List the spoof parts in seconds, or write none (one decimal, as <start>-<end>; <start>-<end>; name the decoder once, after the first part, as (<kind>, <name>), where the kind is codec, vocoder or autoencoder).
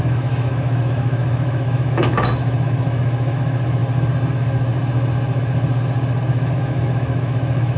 0.0-3.8 (autoencoder, DAC-VAE); 4.3-4.7; 6.3-7.8